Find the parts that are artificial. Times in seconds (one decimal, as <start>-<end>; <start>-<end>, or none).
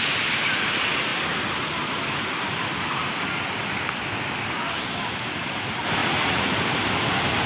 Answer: 6.0-6.5